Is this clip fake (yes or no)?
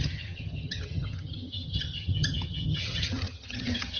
yes